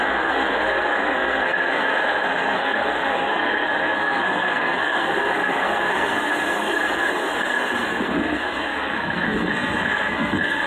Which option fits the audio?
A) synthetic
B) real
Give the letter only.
A